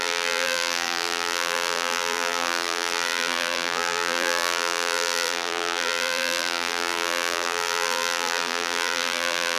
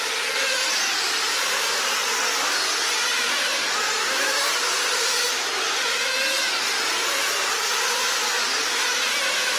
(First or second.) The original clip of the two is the second